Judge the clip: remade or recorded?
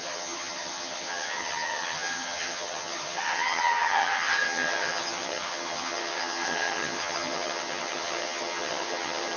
remade